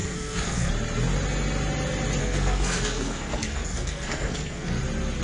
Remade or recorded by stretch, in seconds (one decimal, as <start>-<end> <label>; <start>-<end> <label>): 0.0-0.7 remade; 0.7-2.2 recorded; 2.2-4.8 remade; 4.8-5.2 recorded